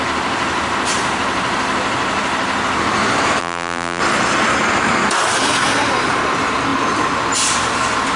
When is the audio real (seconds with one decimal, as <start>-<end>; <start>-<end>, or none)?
0.0-3.4; 4.0-8.2